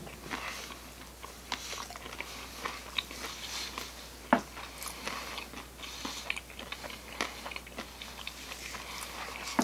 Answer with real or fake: real